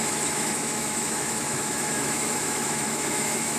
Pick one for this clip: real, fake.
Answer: fake